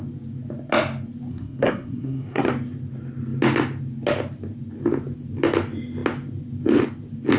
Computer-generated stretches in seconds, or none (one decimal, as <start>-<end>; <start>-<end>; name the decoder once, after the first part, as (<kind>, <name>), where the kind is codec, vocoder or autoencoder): 1.3-2.5 (codec, SNAC)